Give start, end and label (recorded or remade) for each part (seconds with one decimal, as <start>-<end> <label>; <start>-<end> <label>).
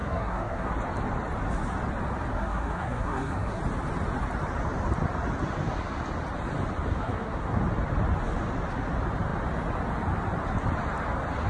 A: 0.0-0.7 remade; 0.7-2.3 recorded; 2.3-3.6 remade; 3.6-6.9 recorded; 6.9-7.6 remade; 7.6-11.5 recorded